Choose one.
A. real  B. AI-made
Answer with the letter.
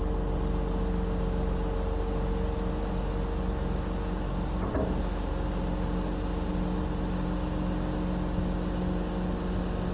A